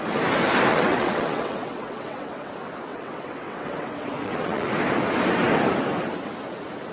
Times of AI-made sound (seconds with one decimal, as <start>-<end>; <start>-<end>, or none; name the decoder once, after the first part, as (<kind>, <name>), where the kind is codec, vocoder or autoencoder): 0.7-2.5 (vocoder, WaveNeXt); 2.9-4.7